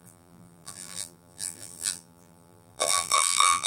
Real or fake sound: fake